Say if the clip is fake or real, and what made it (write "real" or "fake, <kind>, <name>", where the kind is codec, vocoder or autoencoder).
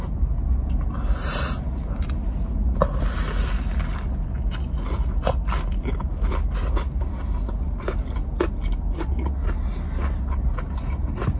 real